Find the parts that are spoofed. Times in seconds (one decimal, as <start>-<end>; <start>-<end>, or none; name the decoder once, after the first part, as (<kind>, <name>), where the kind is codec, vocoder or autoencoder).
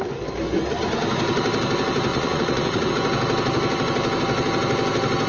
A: 2.1-2.9 (vocoder, Vocos)